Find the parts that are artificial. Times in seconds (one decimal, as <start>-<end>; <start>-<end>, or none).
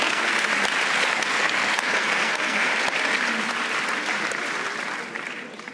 0.0-0.5; 1.1-2.7